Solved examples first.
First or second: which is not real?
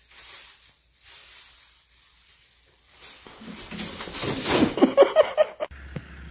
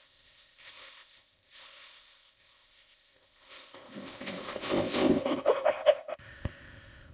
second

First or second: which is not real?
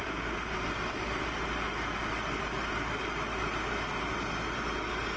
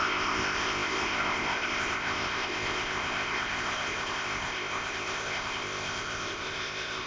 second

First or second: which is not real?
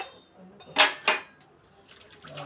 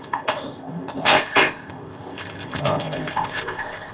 second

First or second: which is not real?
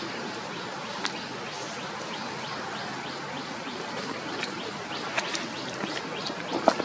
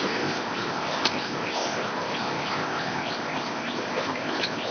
second